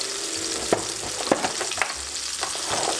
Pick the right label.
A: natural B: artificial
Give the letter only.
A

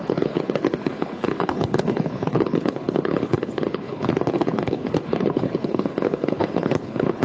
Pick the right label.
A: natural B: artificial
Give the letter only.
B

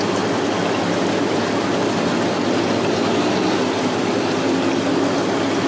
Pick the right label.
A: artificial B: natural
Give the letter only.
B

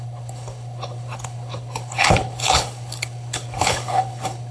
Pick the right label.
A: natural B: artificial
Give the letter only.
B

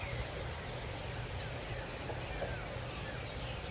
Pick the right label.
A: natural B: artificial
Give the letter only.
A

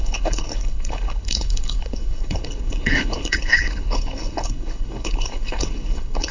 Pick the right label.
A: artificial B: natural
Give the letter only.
A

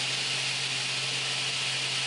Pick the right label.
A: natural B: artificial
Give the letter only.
A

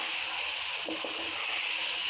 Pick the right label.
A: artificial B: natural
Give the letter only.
B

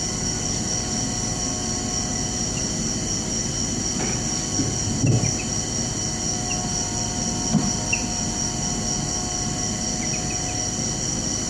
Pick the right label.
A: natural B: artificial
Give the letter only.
A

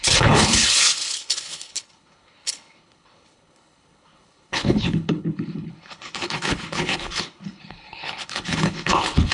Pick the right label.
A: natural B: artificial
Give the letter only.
B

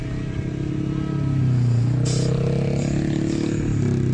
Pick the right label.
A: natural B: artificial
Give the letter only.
A